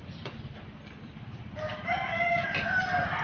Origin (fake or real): real